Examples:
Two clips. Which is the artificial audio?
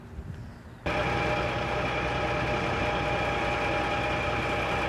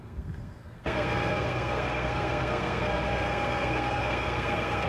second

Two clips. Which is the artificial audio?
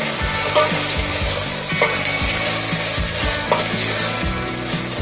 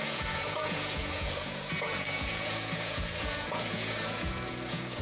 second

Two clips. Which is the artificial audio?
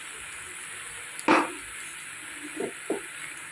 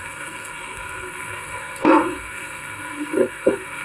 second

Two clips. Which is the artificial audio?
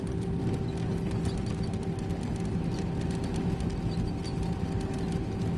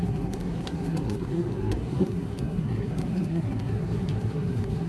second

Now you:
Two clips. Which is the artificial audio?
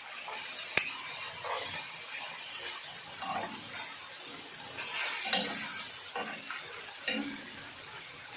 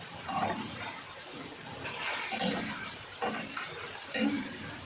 second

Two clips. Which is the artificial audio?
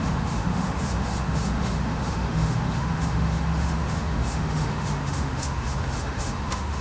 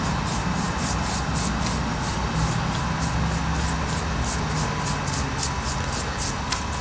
first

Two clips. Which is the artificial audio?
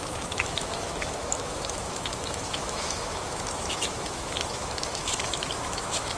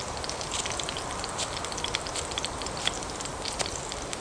first